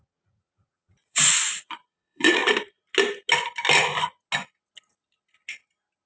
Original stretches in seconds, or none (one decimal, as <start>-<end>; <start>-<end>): 2.4-6.1

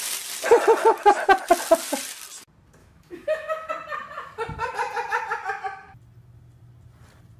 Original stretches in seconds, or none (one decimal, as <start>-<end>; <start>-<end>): 0.0-2.8; 3.7-7.4

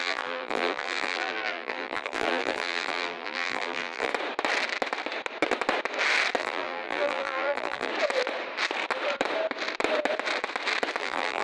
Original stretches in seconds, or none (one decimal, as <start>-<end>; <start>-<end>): 4.1-6.4; 7.9-11.0

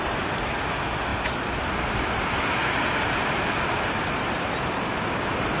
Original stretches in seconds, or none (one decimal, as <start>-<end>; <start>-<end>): 0.0-5.6